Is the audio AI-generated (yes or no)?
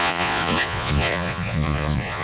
yes